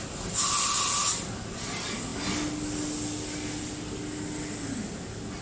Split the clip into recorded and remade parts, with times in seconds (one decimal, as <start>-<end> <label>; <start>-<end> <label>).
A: 0.0-5.4 recorded